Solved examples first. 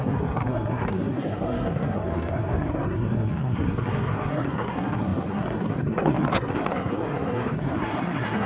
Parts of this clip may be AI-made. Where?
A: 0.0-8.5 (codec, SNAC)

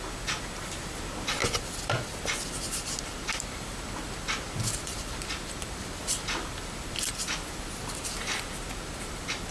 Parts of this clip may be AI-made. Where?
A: 1.4-2.2 (vocoder, BigVGAN v2); 3.2-7.5